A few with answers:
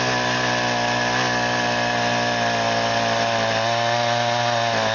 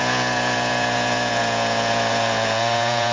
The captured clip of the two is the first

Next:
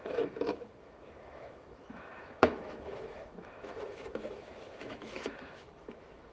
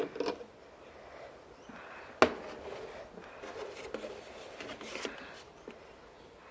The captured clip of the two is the second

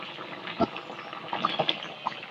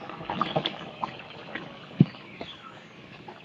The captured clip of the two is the first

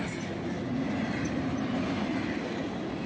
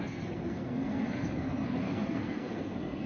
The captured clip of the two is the first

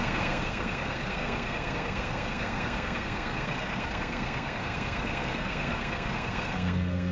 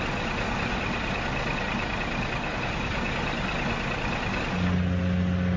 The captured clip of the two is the second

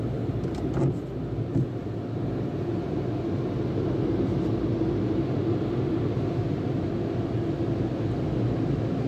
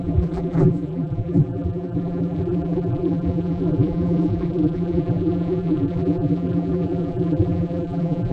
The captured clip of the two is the first